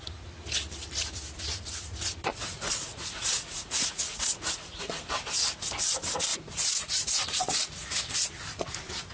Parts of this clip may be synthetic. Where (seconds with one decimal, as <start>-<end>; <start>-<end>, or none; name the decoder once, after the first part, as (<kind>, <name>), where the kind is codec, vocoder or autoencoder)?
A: 2.3-5.0 (vocoder, Vocos); 6.3-8.0